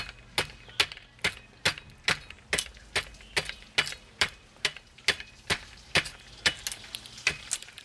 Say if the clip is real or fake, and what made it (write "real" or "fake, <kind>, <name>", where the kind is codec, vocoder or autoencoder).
real